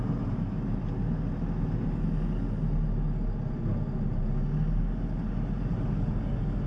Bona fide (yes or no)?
yes